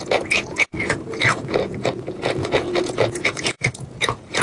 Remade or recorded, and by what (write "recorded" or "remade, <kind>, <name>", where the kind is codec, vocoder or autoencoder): remade, vocoder, Vocos